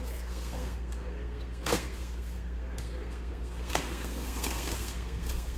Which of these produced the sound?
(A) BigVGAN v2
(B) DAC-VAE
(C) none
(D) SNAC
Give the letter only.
D